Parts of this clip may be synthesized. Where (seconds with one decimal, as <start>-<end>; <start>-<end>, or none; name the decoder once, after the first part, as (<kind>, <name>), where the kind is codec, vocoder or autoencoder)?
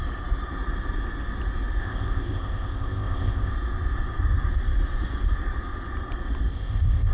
1.8-3.5 (codec, ZipCodec); 6.5-7.1